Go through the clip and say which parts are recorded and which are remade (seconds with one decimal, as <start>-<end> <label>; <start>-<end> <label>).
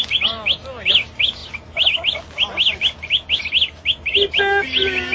0.0-5.1 recorded